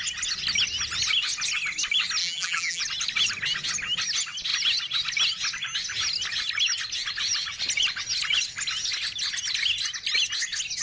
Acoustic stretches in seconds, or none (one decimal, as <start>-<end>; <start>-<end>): 0.0-2.2; 2.8-10.8